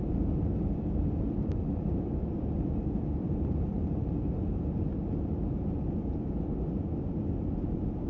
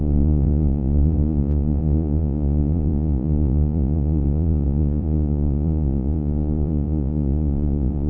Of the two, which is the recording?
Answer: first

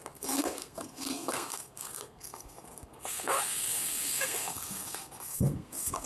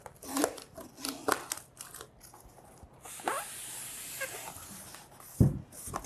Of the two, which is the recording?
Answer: second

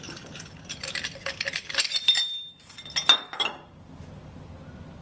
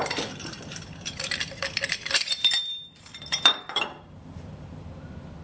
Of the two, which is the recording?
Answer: first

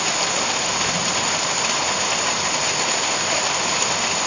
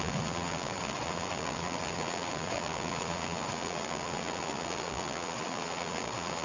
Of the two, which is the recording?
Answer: first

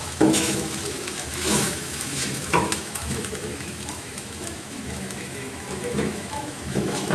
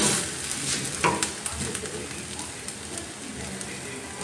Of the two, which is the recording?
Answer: second